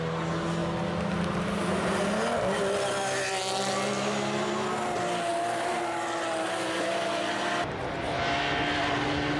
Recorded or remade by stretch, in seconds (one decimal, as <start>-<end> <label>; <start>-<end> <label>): 0.0-9.4 recorded